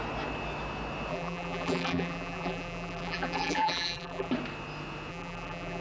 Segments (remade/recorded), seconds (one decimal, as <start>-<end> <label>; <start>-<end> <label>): 0.0-1.1 recorded; 1.1-4.3 remade; 4.3-5.1 recorded; 5.1-5.8 remade